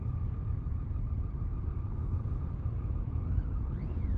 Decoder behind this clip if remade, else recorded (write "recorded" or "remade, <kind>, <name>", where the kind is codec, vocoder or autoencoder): remade, vocoder, BigVGAN v2